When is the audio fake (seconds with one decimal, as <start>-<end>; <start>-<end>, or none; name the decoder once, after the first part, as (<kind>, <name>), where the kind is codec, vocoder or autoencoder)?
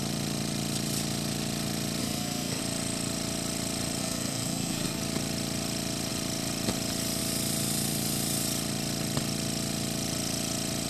2.0-2.6 (codec, SNAC); 4.0-5.0